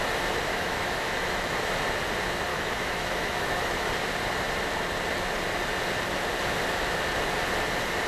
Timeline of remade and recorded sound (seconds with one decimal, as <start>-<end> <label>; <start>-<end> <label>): 0.0-0.5 recorded; 0.5-1.6 remade; 1.6-2.5 recorded; 2.5-3.9 remade; 3.9-8.1 recorded